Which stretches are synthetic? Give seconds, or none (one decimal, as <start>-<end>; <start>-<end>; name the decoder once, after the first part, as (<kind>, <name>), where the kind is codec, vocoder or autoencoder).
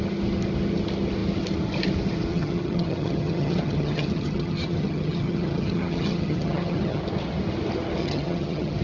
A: 2.3-7.0 (vocoder, HiFi-GAN); 8.0-8.8